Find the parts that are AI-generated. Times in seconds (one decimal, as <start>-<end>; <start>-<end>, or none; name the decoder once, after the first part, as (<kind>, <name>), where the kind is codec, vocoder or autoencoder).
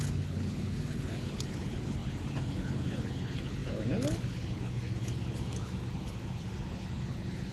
0.0-7.5 (codec, HILCodec)